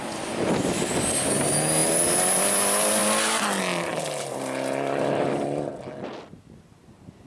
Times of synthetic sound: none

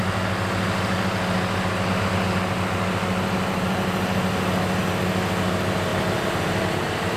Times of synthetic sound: 5.9-7.2 (vocoder, BigVGAN v2)

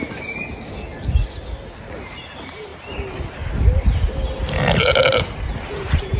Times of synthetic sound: none

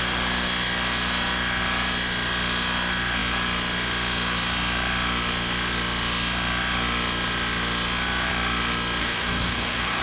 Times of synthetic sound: 9.0-10.0 (codec, DAC)

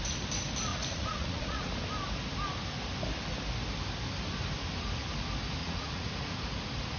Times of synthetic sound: 0.7-1.7 (vocoder, Vocos); 5.6-6.1

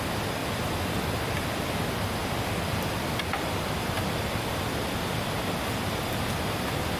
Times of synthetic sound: none

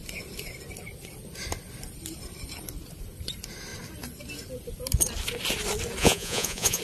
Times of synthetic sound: 6.0-6.8 (vocoder, Vocos)